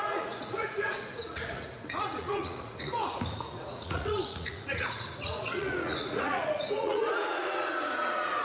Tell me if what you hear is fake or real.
fake